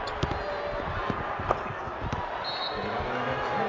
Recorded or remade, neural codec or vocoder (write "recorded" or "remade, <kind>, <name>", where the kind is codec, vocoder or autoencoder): recorded